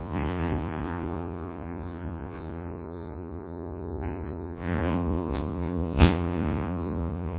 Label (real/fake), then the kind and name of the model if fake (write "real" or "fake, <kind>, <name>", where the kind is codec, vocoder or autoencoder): fake, vocoder, Vocos